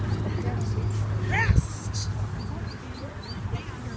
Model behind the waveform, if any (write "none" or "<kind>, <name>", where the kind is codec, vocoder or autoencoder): none